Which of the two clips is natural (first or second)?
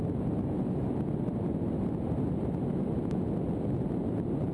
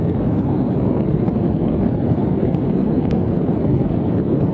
first